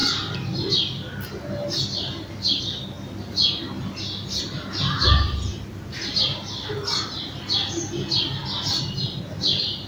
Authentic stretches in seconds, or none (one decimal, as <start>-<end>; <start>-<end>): 0.0-9.9